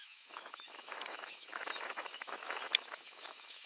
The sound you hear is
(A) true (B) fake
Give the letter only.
B